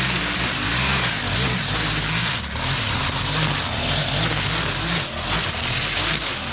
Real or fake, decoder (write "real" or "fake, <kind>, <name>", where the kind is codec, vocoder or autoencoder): real